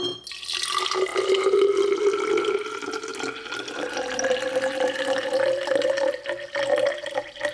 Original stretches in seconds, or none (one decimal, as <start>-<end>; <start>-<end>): 0.0-7.5